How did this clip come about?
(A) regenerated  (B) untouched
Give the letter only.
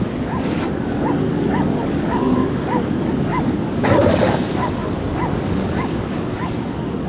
A